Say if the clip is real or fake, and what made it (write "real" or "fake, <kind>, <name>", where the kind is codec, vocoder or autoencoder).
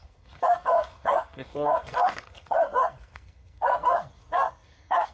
fake, codec, SNAC